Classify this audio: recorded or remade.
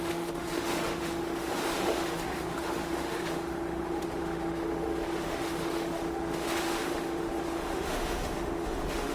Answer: remade